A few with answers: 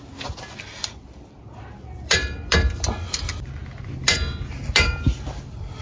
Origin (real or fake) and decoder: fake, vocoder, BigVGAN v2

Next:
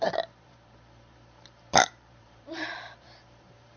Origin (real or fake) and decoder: fake, vocoder, BigVGAN v2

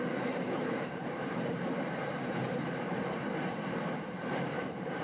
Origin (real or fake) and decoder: fake, vocoder, BigVGAN v2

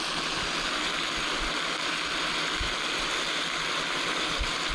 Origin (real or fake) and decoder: real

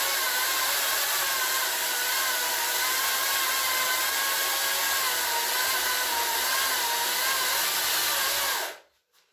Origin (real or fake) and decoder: real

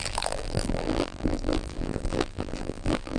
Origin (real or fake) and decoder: fake, vocoder, BigVGAN v2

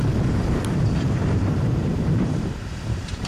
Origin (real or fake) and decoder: fake, vocoder, BigVGAN v2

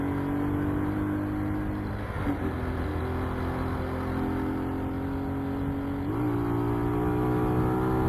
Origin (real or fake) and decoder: real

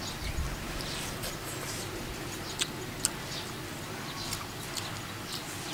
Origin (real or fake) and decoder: real